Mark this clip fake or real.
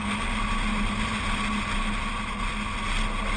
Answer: real